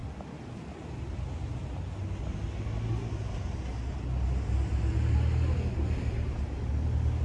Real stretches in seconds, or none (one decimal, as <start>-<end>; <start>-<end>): 0.0-7.2